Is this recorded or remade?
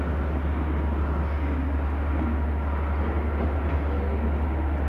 recorded